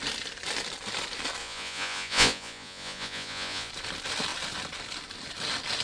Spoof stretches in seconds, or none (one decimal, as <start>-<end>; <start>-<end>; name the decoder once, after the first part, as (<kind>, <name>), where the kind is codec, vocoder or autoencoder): 1.4-3.7 (vocoder, Vocos)